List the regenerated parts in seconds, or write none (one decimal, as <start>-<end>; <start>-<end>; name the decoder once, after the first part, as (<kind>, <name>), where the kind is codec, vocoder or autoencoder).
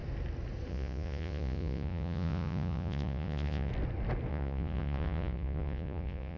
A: 0.7-3.7 (vocoder, Vocos); 4.3-6.4